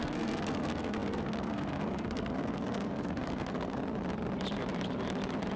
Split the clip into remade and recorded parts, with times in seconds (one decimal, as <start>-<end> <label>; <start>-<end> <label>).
0.0-3.8 remade; 3.8-5.6 recorded